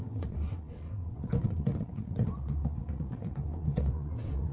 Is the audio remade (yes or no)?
yes